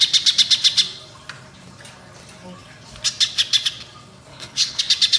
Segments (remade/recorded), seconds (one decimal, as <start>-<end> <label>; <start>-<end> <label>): 0.0-4.3 recorded; 4.3-4.8 remade; 4.8-5.2 recorded

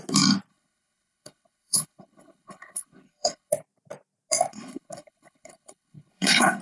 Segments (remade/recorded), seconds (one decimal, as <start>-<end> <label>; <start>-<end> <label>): 0.0-0.5 recorded; 0.5-3.5 remade; 3.5-4.5 recorded; 4.5-6.6 remade

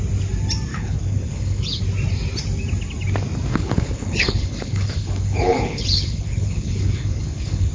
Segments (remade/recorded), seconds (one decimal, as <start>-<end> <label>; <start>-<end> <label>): 0.0-0.7 recorded; 0.7-1.8 remade; 1.8-3.5 recorded; 3.5-7.7 remade

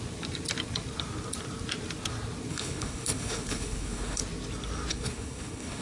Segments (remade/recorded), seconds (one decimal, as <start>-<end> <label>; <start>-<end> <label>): 0.0-2.5 recorded; 2.5-4.2 remade; 4.2-4.9 recorded; 4.9-5.8 remade

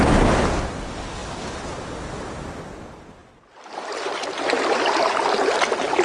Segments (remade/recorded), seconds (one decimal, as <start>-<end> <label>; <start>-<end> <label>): 0.0-6.0 recorded

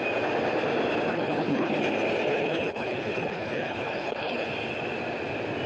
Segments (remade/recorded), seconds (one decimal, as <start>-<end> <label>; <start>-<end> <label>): 0.0-1.1 recorded; 1.1-1.7 remade; 1.7-2.3 recorded; 2.3-4.5 remade; 4.5-5.7 recorded